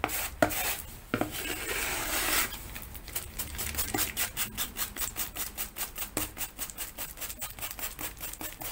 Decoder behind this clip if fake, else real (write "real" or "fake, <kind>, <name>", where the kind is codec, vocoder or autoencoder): real